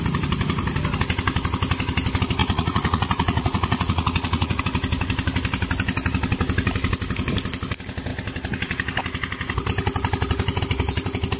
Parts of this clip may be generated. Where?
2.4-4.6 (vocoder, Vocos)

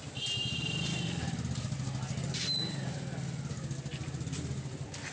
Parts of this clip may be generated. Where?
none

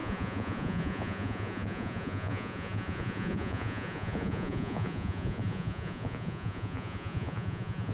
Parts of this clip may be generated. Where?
0.0-7.9 (vocoder, Vocos)

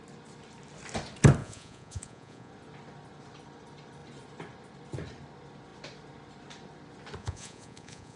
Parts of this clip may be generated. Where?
1.4-2.5 (vocoder, Vocos); 7.2-8.2